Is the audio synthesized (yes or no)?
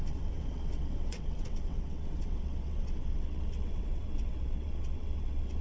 yes